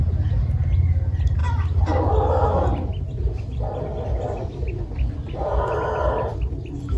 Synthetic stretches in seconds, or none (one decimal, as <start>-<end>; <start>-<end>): none

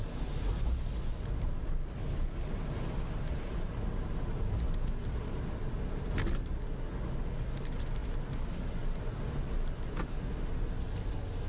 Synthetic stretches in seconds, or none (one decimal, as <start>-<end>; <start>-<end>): none